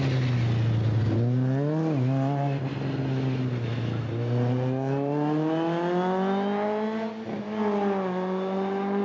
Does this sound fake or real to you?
real